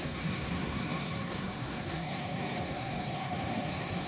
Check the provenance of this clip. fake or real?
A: fake